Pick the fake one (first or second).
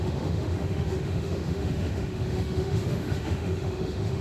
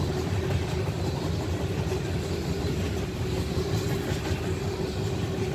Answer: first